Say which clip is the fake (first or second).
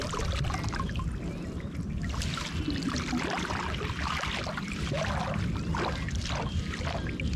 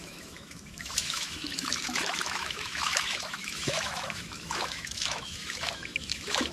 second